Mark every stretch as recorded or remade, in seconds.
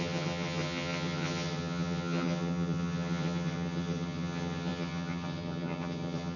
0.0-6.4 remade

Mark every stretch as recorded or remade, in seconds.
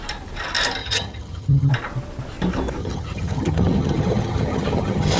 0.0-0.8 recorded; 0.8-1.7 remade; 1.7-2.8 recorded; 2.8-5.2 remade